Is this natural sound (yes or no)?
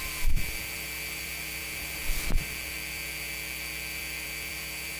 no